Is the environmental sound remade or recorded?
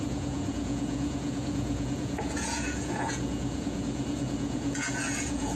remade